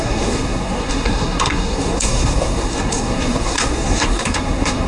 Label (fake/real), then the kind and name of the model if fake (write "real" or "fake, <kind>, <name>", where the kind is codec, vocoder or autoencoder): fake, codec, SNAC